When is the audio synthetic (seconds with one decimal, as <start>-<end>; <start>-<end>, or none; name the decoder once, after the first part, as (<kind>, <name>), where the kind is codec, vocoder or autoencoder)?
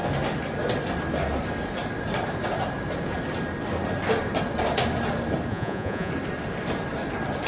5.5-6.1 (vocoder, Vocos)